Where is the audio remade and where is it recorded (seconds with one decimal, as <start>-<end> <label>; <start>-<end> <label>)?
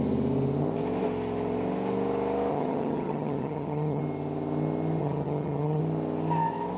0.0-2.5 recorded; 2.5-4.0 remade; 4.0-5.0 recorded; 5.0-5.8 remade; 5.8-6.8 recorded